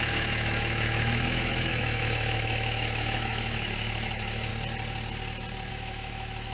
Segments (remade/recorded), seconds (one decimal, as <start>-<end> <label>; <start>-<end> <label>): 0.0-4.5 remade; 4.5-5.7 recorded; 5.7-6.5 remade